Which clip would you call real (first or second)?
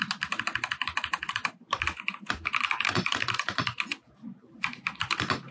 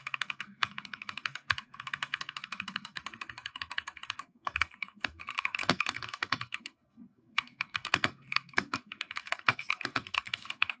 first